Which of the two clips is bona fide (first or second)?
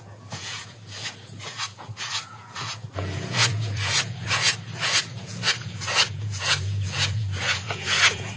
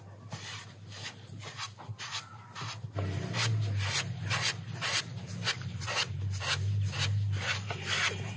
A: second